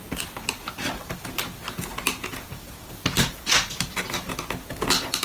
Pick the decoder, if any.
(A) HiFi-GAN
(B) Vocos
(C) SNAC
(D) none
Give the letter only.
D